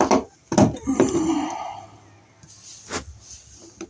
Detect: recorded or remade recorded